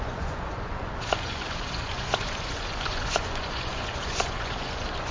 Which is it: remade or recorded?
remade